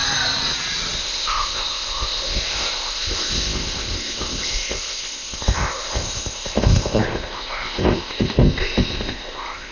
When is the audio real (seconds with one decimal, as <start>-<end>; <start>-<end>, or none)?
0.0-1.0